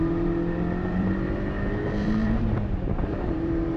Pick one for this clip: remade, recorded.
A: remade